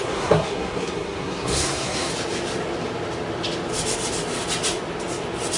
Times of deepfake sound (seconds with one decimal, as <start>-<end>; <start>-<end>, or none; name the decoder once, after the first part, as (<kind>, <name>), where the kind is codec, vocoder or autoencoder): 0.0-2.1 (codec, SNAC)